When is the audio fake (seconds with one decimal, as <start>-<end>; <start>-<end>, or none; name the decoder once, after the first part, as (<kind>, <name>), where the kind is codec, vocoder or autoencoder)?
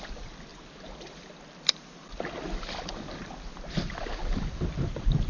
none